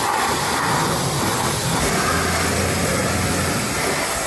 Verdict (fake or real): real